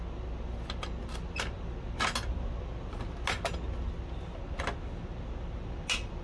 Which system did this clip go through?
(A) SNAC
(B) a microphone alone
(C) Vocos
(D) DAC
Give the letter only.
B